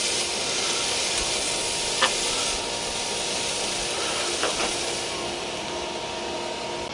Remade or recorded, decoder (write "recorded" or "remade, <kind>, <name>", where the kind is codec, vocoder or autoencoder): recorded